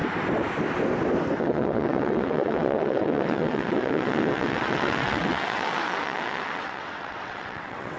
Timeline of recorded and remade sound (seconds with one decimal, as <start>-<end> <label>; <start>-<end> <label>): 0.0-1.4 recorded; 1.4-8.0 remade